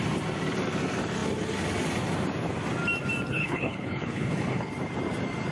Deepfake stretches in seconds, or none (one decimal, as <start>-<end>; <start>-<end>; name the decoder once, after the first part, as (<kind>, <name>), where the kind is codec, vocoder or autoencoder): 3.3-4.7 (codec, HILCodec)